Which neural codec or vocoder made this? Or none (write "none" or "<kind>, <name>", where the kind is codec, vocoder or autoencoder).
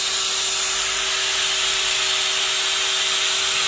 none